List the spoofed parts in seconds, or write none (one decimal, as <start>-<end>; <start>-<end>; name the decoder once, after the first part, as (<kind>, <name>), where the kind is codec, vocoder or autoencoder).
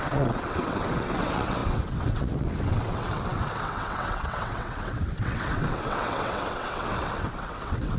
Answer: 0.0-8.0 (vocoder, WaveNeXt)